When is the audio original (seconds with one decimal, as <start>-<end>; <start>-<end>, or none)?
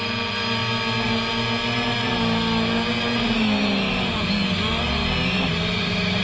0.6-4.0; 4.4-5.5